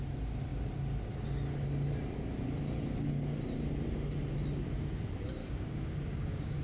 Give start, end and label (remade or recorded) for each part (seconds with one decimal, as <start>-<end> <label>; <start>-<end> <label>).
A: 0.0-5.4 recorded; 5.4-6.6 remade